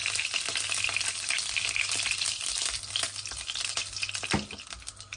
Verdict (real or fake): real